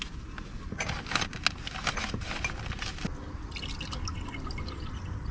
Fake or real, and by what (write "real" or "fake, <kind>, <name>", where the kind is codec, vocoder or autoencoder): real